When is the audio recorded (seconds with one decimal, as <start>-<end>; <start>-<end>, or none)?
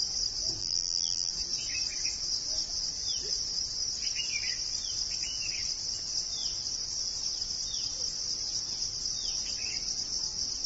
0.0-0.6; 1.3-10.7